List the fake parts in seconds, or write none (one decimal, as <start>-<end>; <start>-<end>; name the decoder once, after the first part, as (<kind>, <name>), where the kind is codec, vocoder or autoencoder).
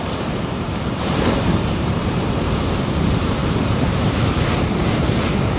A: 0.0-5.6 (vocoder, BigVGAN v2)